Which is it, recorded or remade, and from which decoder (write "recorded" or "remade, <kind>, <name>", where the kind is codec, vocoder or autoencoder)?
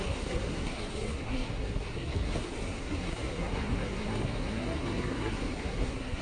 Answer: remade, codec, SNAC